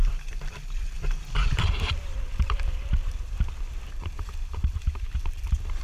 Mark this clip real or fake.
fake